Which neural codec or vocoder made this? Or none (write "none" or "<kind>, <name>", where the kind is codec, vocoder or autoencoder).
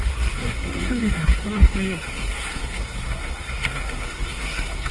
codec, SNAC